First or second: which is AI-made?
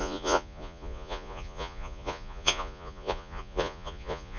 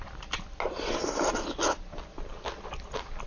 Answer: first